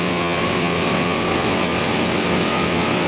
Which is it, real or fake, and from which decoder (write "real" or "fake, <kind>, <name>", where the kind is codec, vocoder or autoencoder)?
fake, vocoder, WaveNeXt